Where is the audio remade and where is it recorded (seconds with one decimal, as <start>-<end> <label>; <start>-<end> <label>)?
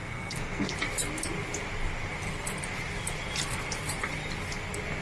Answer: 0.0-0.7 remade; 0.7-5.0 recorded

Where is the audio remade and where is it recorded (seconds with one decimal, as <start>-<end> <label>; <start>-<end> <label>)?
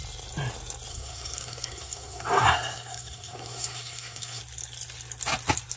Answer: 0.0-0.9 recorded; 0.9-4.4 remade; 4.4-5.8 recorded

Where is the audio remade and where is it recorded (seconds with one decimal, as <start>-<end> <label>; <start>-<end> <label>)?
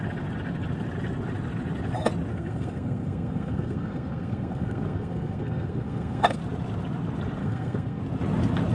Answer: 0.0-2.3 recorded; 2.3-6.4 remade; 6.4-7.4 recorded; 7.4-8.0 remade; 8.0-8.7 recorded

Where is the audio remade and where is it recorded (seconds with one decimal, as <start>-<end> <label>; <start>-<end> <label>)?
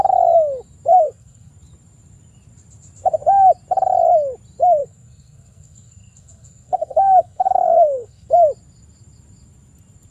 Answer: 0.0-0.9 recorded; 0.9-1.5 remade; 1.5-4.8 recorded; 4.8-8.3 remade; 8.3-10.1 recorded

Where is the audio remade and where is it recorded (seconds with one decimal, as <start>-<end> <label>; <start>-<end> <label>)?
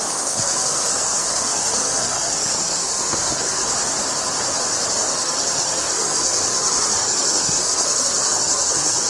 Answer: 0.0-3.6 remade; 3.6-4.9 recorded; 4.9-9.1 remade